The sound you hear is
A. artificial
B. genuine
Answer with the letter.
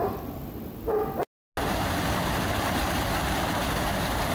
B